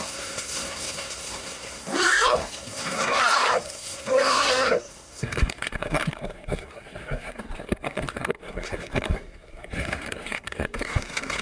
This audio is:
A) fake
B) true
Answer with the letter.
A